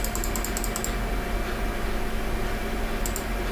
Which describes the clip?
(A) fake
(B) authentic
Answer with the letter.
B